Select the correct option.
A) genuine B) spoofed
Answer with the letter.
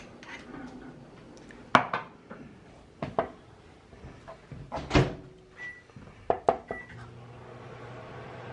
A